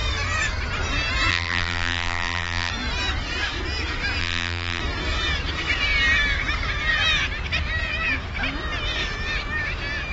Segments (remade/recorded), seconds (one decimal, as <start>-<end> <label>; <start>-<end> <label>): 0.0-1.3 recorded; 1.3-2.7 remade; 2.7-4.2 recorded; 4.2-4.8 remade; 4.8-10.1 recorded